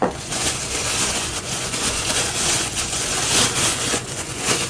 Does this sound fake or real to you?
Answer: fake